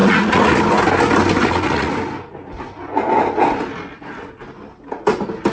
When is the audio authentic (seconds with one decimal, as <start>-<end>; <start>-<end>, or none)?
0.6-1.4; 1.9-5.5

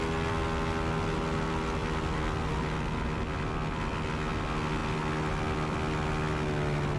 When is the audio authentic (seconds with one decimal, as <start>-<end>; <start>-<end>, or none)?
0.0-7.0

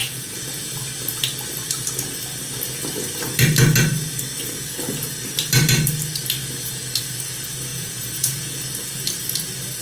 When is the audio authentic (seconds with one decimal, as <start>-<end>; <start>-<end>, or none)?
0.5-7.7; 8.6-9.8

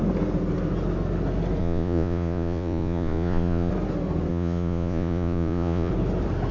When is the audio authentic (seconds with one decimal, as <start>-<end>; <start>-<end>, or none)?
0.0-1.6; 3.7-4.3; 5.9-6.5

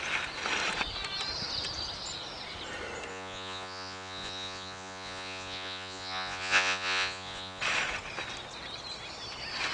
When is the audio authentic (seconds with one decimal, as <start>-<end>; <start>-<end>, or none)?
0.0-3.1; 7.6-9.7

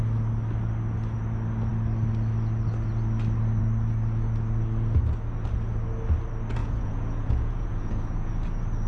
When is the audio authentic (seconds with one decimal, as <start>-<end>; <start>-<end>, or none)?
0.0-6.6; 8.3-8.9